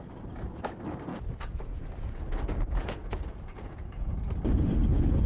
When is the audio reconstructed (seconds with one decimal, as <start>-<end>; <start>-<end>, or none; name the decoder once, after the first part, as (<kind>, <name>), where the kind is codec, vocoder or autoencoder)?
1.1-4.3 (vocoder, Vocos)